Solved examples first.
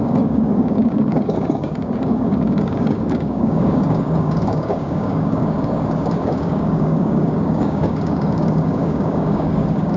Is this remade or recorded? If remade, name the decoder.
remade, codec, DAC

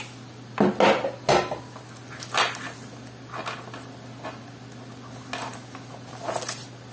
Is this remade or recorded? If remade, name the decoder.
recorded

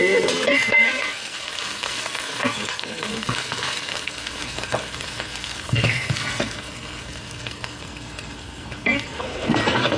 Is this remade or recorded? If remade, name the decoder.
remade, codec, SNAC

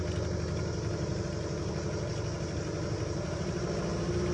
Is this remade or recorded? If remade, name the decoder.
recorded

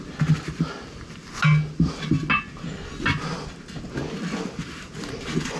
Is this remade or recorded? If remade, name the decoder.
recorded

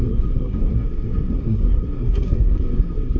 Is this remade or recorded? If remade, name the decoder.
remade, codec, SNAC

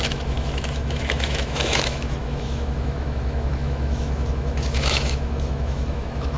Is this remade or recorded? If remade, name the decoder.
remade, autoencoder, DAC-VAE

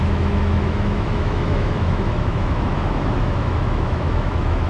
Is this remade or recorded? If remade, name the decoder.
remade, autoencoder, DAC-VAE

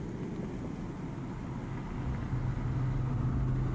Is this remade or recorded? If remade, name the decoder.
recorded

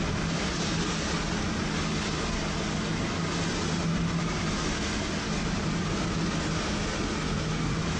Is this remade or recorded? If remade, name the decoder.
recorded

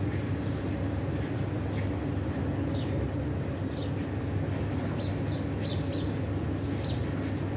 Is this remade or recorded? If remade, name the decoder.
recorded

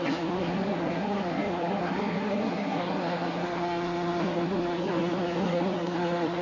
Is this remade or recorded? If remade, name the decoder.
remade, codec, SNAC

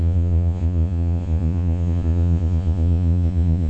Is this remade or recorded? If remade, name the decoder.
remade, vocoder, Vocos